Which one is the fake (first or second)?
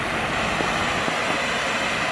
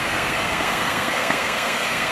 second